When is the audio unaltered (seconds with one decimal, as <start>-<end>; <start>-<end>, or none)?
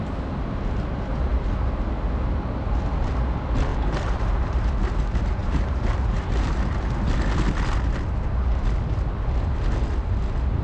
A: 0.0-3.7; 4.7-5.4; 6.5-10.6